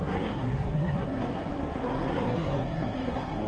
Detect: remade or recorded remade